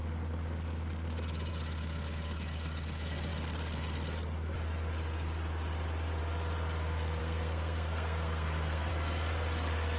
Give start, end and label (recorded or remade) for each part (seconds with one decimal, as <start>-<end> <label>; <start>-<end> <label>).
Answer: 0.0-7.2 recorded; 7.2-8.9 remade; 8.9-10.0 recorded